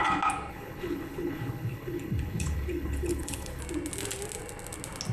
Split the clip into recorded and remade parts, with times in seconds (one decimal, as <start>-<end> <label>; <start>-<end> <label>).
0.0-0.5 recorded; 0.5-3.6 remade; 3.6-5.1 recorded